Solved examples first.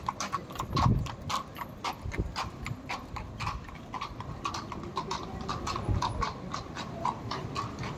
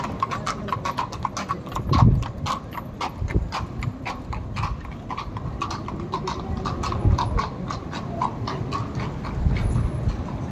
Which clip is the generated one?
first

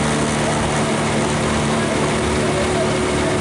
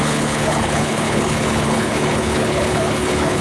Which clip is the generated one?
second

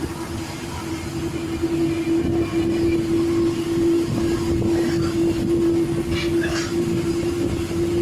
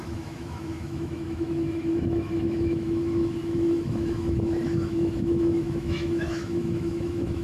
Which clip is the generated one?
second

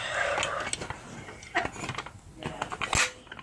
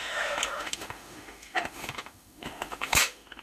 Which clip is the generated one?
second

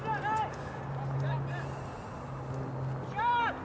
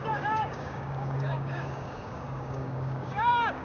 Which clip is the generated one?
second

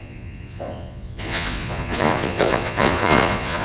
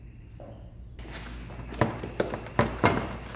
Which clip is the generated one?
first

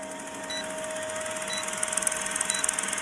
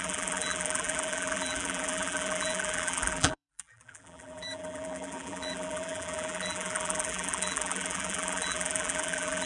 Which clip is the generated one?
second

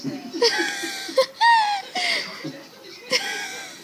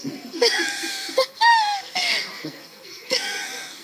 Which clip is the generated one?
second